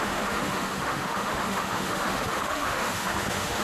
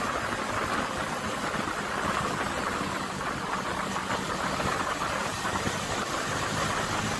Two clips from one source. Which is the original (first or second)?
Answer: second